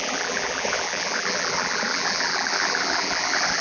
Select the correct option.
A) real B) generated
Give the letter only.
B